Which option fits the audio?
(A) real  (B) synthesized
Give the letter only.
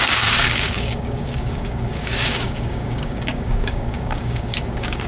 B